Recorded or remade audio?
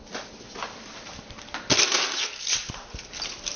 recorded